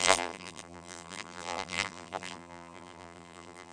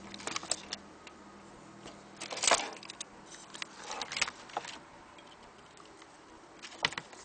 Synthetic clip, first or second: first